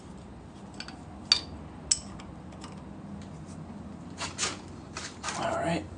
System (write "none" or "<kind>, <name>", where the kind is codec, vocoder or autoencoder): none